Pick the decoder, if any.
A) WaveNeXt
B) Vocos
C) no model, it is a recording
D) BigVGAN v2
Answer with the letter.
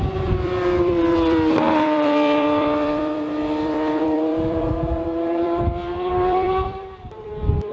D